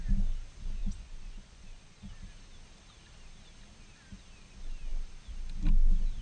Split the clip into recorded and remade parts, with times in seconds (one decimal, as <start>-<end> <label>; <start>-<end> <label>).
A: 0.0-0.8 recorded; 0.8-2.1 remade; 2.1-6.2 recorded